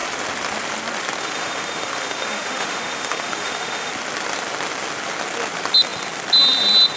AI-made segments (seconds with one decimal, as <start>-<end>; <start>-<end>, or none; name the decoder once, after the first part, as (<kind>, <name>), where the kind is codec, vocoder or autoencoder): 1.2-3.9 (autoencoder, DAC-VAE)